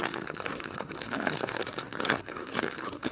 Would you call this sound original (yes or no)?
no